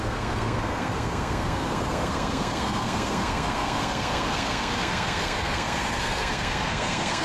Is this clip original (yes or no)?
no